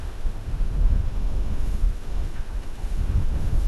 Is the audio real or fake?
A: fake